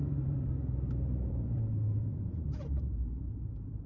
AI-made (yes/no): yes